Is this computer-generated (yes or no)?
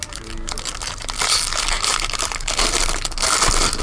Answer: no